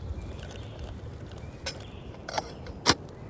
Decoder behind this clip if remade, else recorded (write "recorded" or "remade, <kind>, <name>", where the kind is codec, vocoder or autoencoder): recorded